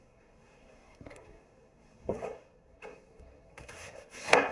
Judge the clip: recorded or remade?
remade